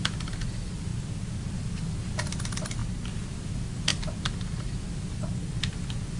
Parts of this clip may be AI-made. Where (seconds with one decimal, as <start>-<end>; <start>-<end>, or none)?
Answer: 0.0-0.9; 1.5-2.8; 3.3-6.2